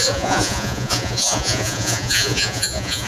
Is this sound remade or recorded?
remade